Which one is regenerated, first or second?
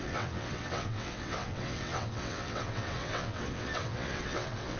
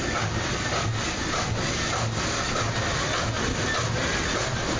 first